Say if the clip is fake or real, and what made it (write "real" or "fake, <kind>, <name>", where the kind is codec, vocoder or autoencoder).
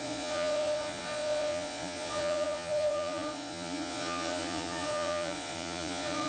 fake, vocoder, Vocos